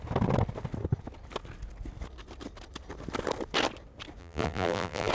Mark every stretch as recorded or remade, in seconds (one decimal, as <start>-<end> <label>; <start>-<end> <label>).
0.0-4.2 recorded; 4.2-5.1 remade